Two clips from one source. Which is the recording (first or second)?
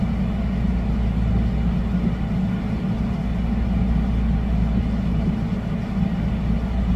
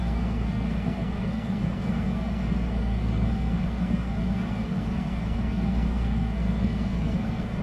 first